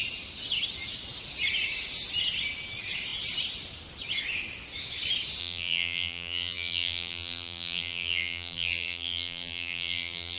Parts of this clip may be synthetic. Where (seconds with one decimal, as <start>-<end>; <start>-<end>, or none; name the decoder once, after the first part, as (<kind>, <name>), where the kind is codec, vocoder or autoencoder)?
5.4-10.4 (vocoder, BigVGAN v2)